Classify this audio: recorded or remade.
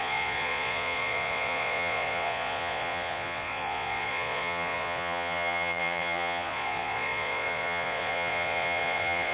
remade